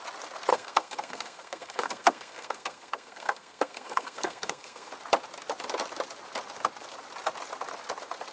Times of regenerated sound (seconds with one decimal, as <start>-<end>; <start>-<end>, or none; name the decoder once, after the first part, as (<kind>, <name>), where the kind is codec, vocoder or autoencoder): 0.5-4.9 (codec, SNAC)